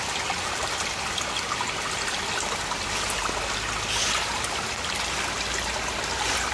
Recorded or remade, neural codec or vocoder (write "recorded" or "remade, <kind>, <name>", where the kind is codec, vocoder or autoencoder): recorded